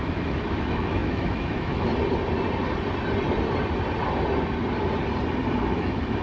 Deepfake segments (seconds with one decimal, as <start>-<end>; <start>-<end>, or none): 0.0-1.9; 5.6-6.2